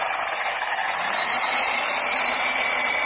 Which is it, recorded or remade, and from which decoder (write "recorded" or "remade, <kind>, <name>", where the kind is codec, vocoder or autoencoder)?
remade, vocoder, BigVGAN v2